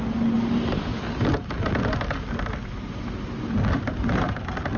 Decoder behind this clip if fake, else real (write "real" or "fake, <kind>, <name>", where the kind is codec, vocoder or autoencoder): real